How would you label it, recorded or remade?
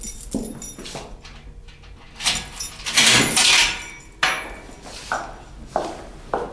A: recorded